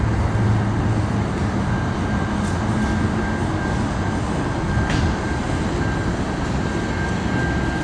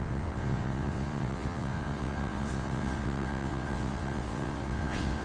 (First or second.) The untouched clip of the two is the first